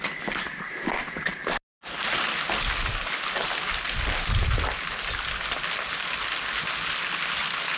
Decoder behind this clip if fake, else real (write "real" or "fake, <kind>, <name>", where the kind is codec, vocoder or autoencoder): real